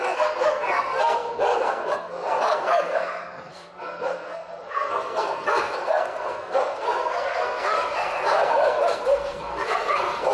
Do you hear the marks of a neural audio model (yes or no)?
yes